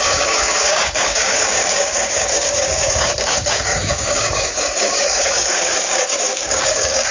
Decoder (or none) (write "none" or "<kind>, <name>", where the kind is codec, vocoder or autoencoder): codec, DAC